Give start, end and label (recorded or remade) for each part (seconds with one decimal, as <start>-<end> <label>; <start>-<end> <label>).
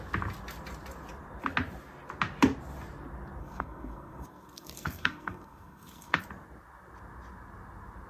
0.0-3.4 recorded; 3.4-6.2 remade; 6.2-8.1 recorded